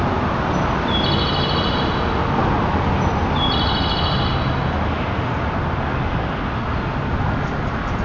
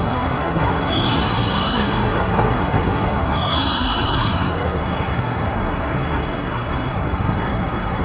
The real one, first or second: first